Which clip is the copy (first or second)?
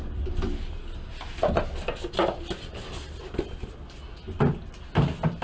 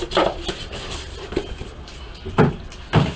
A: second